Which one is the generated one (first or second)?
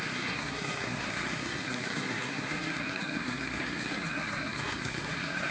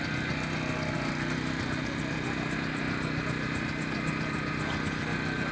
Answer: first